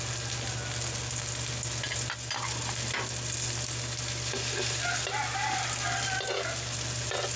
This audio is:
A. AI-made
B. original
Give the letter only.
B